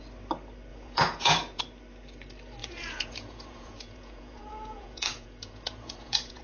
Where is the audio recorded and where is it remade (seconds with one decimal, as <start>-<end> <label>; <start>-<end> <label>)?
0.0-0.7 recorded; 0.7-1.6 remade; 1.6-2.6 recorded; 2.6-6.4 remade